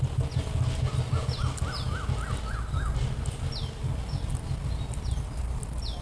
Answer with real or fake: real